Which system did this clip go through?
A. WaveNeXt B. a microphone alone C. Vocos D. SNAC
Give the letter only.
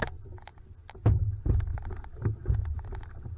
B